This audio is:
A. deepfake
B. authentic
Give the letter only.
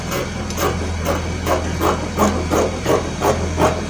B